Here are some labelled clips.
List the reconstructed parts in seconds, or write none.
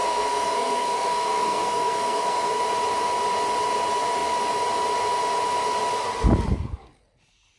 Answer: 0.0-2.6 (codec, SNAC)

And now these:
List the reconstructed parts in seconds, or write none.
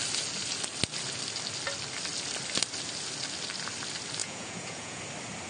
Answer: 4.2-5.0 (vocoder, Vocos)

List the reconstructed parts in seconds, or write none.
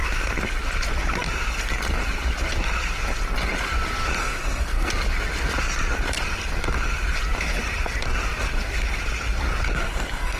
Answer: 4.2-4.9 (codec, SNAC); 9.7-10.4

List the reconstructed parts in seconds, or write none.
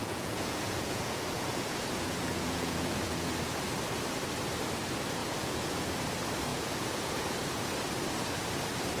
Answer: 0.0-3.3 (vocoder, Vocos); 5.2-5.9; 6.5-7.6